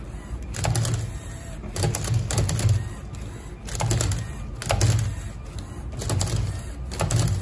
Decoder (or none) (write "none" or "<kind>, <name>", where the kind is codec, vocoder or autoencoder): none